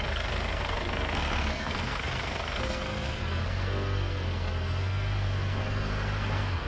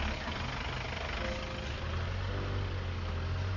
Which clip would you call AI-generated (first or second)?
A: first